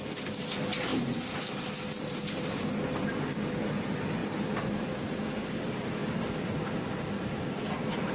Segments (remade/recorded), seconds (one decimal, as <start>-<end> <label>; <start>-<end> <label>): 0.0-0.9 recorded; 0.9-1.5 remade; 1.5-4.2 recorded; 4.2-5.1 remade; 5.1-6.0 recorded; 6.0-7.2 remade; 7.2-8.1 recorded